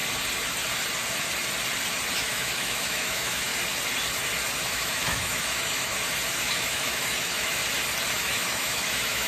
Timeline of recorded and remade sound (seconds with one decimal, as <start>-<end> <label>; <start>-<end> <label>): 0.0-2.1 recorded; 2.1-3.5 remade; 3.5-4.6 recorded; 4.6-5.9 remade; 5.9-6.5 recorded; 6.5-7.6 remade; 7.6-8.1 recorded; 8.1-9.3 remade